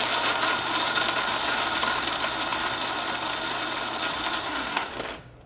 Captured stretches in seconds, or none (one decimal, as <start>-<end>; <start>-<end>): 0.0-4.4; 4.9-5.5